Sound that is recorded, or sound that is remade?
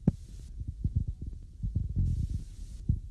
recorded